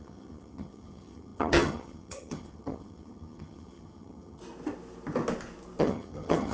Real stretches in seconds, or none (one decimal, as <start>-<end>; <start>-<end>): 4.4-5.8